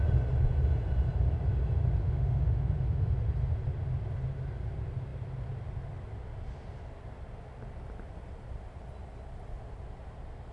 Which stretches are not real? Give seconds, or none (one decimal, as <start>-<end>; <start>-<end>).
2.0-3.1